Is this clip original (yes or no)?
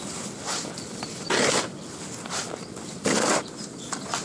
yes